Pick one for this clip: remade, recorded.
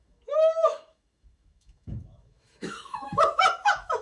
remade